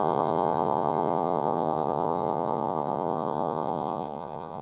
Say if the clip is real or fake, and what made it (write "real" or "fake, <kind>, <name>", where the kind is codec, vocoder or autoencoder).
fake, vocoder, Vocos